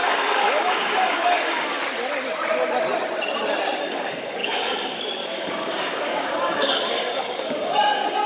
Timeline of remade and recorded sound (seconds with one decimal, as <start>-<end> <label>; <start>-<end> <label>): 0.0-1.8 remade; 1.8-3.8 recorded; 3.8-8.3 remade